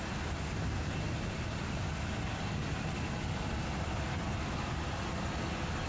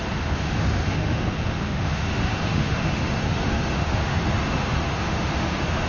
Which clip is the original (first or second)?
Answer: first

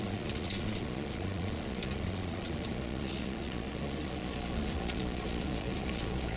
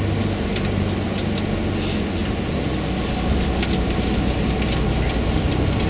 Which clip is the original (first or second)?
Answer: second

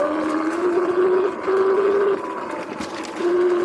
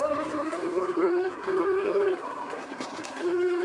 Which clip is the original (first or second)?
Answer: first